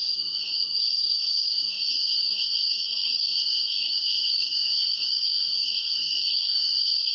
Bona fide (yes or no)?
no